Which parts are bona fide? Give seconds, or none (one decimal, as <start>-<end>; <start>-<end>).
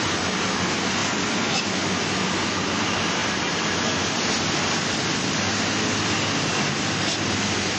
0.0-7.8